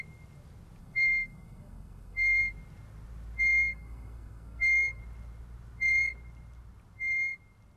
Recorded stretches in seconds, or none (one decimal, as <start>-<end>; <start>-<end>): 0.0-0.8; 2.4-3.5; 5.0-7.8